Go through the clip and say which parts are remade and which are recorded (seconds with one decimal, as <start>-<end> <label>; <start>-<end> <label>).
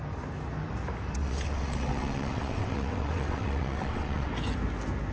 0.0-1.2 recorded; 1.2-4.3 remade; 4.3-5.1 recorded